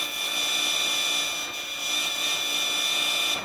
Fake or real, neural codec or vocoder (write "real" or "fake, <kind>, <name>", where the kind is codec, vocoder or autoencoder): real